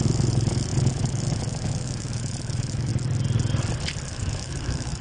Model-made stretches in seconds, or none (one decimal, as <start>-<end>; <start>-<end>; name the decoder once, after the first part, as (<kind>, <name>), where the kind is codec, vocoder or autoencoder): 0.0-2.9 (autoencoder, DAC-VAE); 4.1-5.0

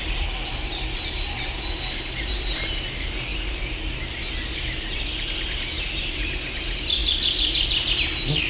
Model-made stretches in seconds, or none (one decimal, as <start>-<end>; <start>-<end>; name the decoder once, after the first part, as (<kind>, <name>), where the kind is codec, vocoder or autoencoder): none

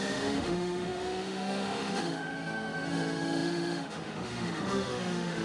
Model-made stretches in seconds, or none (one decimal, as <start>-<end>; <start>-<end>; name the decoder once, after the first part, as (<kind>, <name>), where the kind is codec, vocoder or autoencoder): 0.0-5.4 (autoencoder, DAC-VAE)

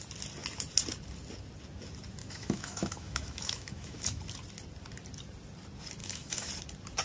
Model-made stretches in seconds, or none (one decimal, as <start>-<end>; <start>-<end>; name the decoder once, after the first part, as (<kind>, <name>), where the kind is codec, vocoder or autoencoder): 2.2-4.2 (autoencoder, DAC-VAE); 6.0-6.5

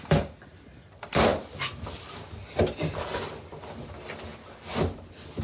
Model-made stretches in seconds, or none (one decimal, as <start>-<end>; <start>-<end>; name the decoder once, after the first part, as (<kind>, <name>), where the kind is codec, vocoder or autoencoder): none